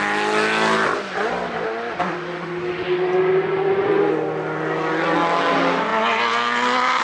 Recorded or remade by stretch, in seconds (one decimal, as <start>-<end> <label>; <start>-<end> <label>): 0.0-7.0 recorded